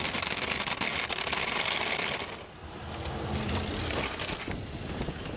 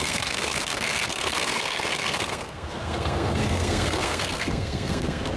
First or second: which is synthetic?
second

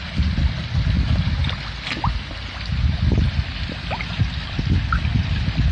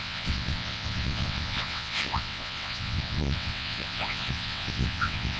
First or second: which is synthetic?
second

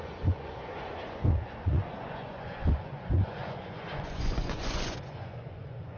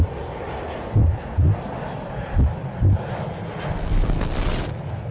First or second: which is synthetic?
first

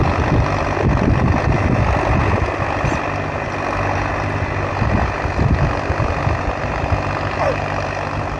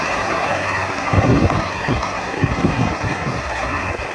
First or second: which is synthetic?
second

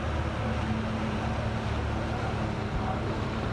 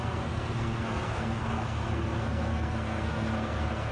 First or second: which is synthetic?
second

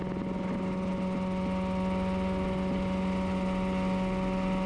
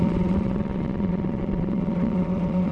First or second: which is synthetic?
second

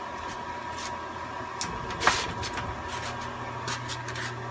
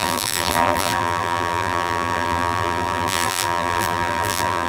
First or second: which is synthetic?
second